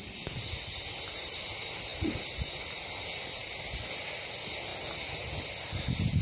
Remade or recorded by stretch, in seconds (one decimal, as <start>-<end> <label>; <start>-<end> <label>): 0.0-1.9 recorded; 1.9-2.6 remade; 2.6-6.2 recorded